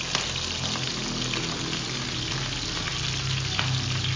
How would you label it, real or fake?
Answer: real